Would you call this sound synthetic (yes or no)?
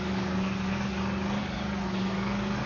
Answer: yes